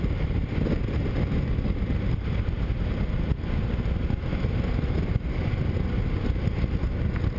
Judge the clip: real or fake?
real